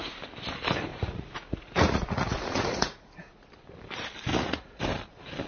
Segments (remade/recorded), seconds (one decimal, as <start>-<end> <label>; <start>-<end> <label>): 0.0-0.9 recorded; 0.9-3.5 remade; 3.5-4.3 recorded; 4.3-4.8 remade; 4.8-5.5 recorded